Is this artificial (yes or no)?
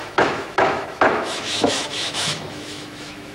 yes